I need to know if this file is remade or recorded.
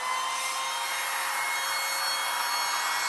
recorded